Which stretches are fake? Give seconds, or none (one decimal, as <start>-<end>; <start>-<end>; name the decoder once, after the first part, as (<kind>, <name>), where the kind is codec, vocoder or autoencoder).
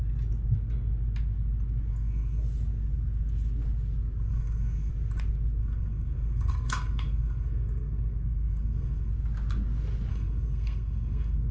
1.9-2.4 (codec, SNAC); 4.3-4.9; 5.6-9.1; 10.1-11.5